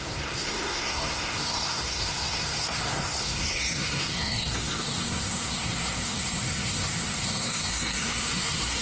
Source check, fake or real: fake